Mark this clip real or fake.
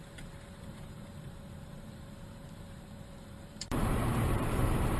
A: fake